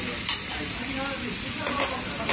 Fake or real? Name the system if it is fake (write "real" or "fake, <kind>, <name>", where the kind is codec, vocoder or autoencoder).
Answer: real